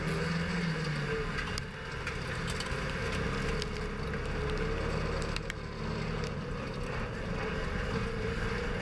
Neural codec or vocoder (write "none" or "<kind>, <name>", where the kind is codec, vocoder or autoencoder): none